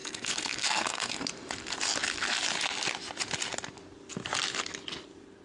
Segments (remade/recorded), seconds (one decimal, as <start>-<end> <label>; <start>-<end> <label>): 0.0-1.2 remade; 1.2-5.4 recorded